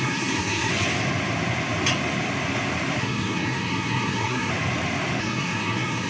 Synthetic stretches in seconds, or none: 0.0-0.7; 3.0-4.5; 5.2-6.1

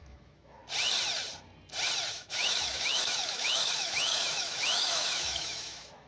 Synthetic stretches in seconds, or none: 0.0-0.6; 2.1-6.1

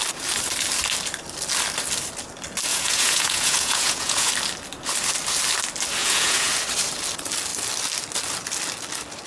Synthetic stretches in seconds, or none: 2.7-4.3; 6.0-6.5

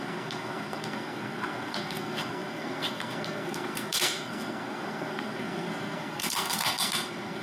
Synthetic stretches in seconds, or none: 0.0-7.4

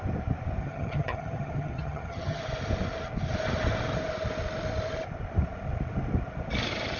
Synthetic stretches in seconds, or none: 0.6-2.4